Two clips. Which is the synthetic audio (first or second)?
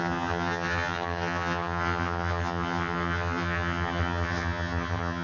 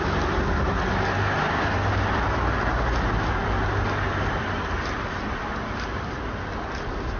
first